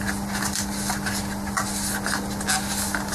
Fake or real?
real